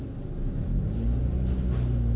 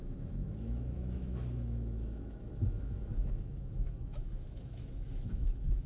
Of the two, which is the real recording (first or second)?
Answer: first